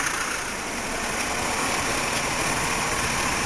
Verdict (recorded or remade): remade